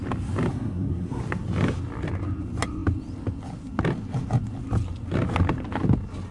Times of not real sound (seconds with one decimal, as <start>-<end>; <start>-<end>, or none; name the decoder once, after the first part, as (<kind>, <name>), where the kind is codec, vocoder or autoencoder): 0.5-1.2 (codec, SNAC)